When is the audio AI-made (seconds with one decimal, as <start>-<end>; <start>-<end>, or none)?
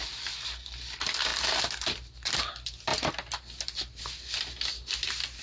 none